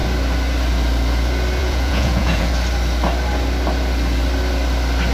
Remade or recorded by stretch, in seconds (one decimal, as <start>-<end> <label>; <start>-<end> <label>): 0.0-1.6 recorded; 1.6-2.5 remade; 2.5-5.1 recorded